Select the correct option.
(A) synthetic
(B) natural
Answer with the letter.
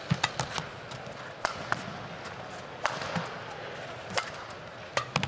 B